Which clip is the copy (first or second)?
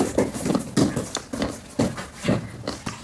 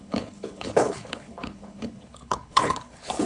second